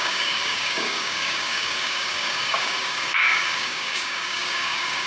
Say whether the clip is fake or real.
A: fake